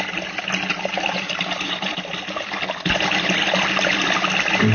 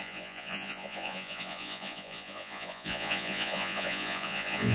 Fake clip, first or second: second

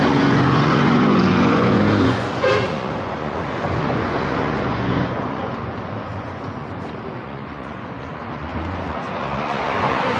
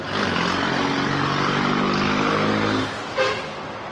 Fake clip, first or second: first